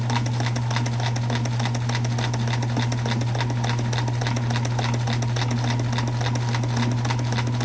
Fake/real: real